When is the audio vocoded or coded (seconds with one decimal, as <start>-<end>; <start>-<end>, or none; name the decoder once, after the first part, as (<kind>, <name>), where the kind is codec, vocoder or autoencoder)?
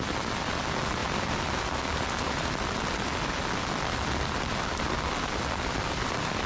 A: none